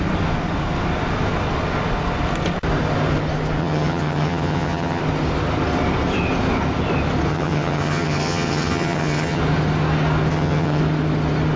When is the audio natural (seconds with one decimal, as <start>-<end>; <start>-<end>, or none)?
0.0-3.6; 5.0-7.3; 9.4-10.3; 10.8-11.6

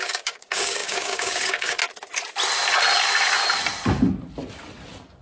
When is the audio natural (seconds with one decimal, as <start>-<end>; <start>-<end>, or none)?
1.8-5.2

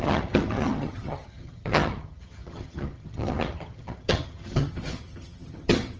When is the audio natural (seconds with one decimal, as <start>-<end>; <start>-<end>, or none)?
none

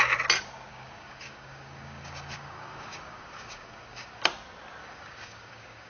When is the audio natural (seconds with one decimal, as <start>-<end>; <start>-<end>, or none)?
0.0-0.7; 4.2-4.8